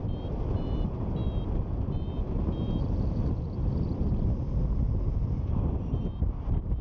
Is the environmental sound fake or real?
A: real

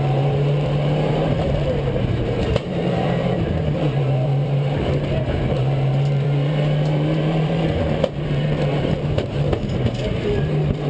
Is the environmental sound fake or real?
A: fake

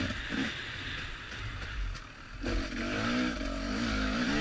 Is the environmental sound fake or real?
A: real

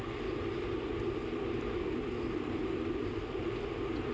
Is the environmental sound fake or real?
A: real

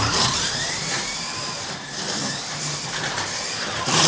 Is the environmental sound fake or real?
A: fake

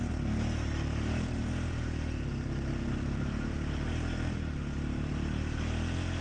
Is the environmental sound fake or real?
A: real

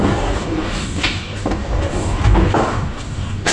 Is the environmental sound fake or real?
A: fake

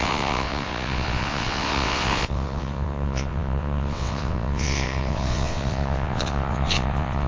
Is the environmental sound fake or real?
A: fake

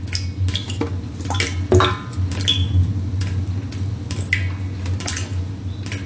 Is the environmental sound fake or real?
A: real